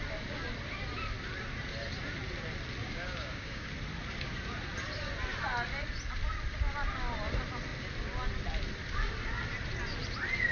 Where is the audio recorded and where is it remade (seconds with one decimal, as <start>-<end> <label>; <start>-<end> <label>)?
0.0-2.8 recorded; 2.8-3.7 remade; 3.7-10.5 recorded